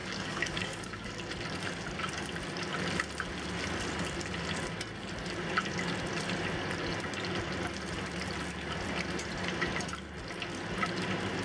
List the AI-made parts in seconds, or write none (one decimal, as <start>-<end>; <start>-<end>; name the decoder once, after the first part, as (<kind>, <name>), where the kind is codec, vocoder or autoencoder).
0.0-1.1 (codec, DAC)